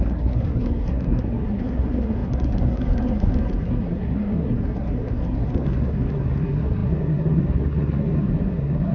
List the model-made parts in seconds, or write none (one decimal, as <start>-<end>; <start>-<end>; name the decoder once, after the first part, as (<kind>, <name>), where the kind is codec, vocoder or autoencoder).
0.0-8.9 (codec, SNAC)

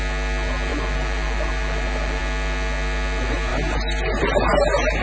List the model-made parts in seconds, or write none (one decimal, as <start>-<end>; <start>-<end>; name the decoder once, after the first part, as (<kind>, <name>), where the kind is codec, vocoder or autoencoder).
0.7-2.2 (vocoder, BigVGAN v2); 3.5-4.2

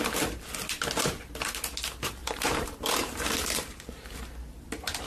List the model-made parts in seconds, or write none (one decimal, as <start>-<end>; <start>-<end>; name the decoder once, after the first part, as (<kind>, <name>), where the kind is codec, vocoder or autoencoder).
2.2-4.3 (vocoder, BigVGAN v2)

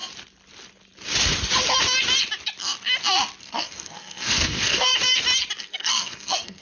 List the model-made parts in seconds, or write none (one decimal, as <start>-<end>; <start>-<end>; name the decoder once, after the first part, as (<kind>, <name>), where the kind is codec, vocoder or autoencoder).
3.4-4.9 (codec, SNAC); 5.6-6.6

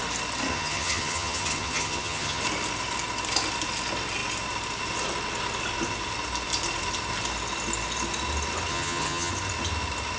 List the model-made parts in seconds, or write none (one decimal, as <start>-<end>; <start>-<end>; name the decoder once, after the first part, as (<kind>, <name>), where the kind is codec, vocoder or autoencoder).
0.5-2.4 (vocoder, HiFi-GAN); 8.7-9.3

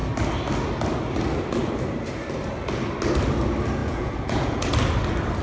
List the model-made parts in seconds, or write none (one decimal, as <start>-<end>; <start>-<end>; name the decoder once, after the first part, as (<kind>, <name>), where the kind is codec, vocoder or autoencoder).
3.8-4.7 (vocoder, Vocos)

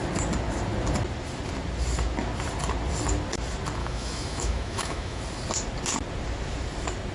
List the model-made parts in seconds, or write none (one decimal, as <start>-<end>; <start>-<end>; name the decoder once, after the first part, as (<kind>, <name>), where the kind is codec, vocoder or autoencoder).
3.8-5.2 (autoencoder, DAC-VAE)